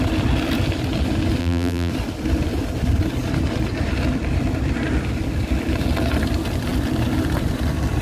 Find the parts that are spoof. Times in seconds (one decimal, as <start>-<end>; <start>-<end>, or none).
1.4-1.9